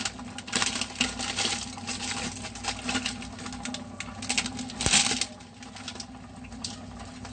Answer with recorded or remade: recorded